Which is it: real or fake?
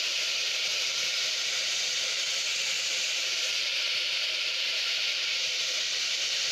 fake